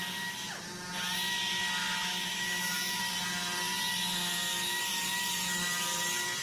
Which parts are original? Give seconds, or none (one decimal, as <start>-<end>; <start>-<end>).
0.0-1.8; 3.0-6.4